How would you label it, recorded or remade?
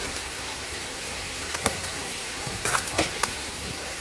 remade